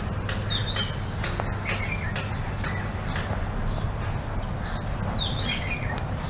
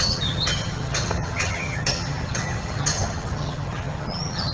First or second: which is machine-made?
second